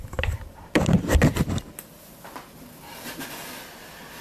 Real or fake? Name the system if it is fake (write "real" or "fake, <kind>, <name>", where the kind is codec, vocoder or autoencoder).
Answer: real